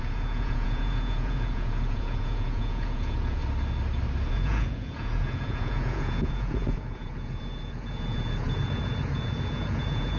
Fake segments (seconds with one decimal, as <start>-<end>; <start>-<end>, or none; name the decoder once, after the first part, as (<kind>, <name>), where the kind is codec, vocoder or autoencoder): 0.0-3.4 (vocoder, Vocos); 4.3-10.2